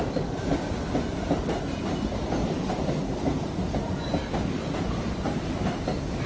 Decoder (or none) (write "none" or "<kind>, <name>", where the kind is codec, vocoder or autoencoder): none